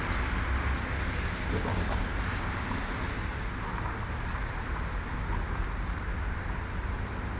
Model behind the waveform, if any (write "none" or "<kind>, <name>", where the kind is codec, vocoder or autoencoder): none